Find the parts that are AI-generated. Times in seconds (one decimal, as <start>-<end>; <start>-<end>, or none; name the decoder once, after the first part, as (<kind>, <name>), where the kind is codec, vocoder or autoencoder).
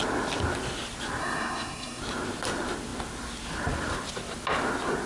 1.2-2.0 (codec, SNAC)